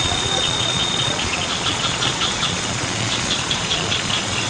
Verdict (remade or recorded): remade